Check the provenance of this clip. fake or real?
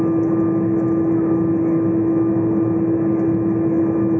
real